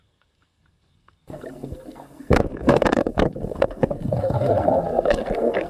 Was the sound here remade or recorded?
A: remade